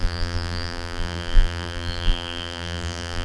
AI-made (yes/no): yes